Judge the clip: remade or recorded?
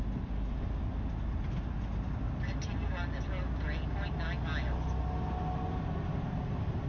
recorded